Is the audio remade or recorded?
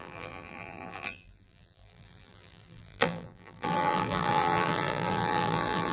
remade